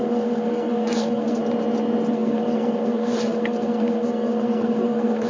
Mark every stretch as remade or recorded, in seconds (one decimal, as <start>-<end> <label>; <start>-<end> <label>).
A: 0.0-1.4 remade; 1.4-2.1 recorded; 2.1-5.3 remade